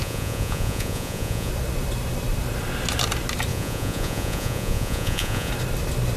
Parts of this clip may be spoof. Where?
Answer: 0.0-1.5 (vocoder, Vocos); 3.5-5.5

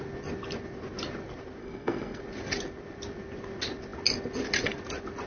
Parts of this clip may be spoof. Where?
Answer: 1.6-2.2 (codec, SNAC)

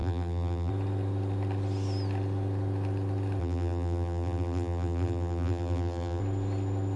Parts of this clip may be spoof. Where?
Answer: 0.0-0.7 (vocoder, BigVGAN v2); 3.4-6.2

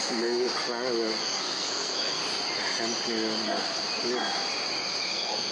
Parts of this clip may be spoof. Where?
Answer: 0.0-0.5 (codec, SNAC); 1.2-2.2; 5.1-5.5

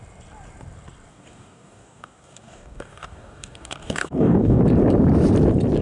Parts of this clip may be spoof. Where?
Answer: 1.1-4.6 (codec, DAC)